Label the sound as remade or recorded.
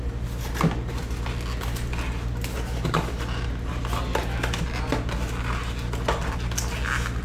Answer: recorded